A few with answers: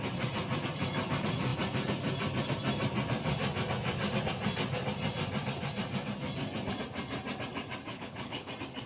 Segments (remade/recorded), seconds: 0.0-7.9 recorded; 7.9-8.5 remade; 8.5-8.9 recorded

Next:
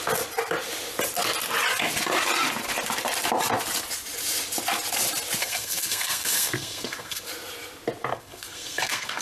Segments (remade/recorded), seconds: 0.0-5.4 recorded; 5.4-7.3 remade; 7.3-8.1 recorded; 8.1-9.2 remade